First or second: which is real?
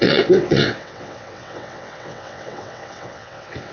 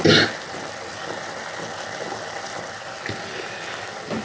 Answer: second